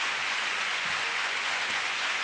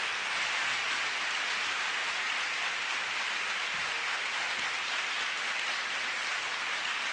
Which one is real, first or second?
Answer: second